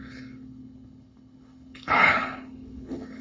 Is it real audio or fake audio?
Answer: fake